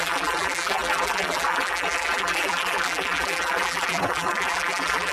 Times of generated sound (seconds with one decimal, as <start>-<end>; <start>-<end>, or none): 0.0-5.1